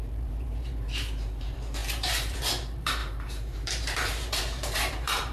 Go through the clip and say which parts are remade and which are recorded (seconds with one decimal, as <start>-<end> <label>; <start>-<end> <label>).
0.0-5.3 remade